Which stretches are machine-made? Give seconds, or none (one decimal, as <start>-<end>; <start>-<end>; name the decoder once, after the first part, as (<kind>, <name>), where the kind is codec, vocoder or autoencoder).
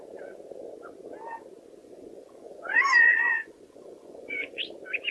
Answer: 1.8-4.6 (vocoder, Vocos)